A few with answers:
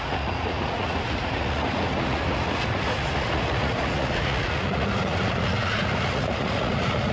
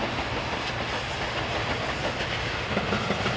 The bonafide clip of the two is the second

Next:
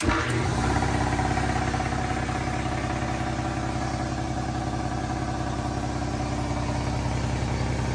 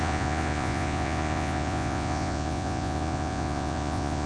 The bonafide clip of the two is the first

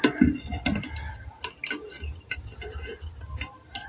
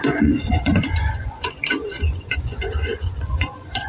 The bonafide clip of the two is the first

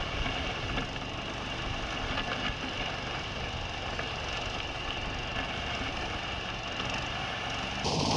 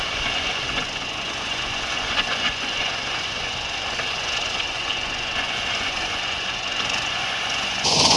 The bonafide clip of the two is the first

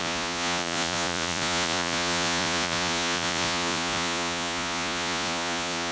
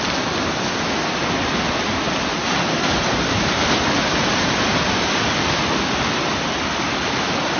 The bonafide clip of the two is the second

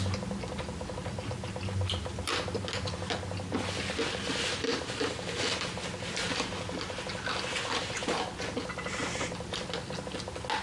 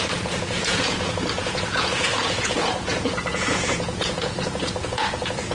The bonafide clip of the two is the first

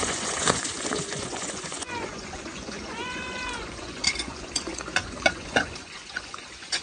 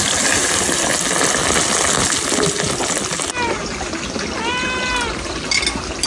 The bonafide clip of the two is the second